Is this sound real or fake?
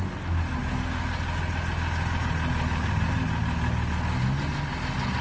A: real